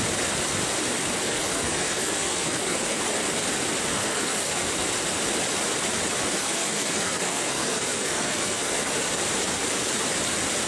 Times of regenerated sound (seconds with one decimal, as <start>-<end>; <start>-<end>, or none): 1.2-3.0; 3.9-4.7; 6.4-8.9